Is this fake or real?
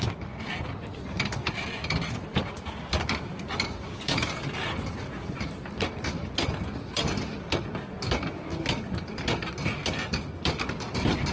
real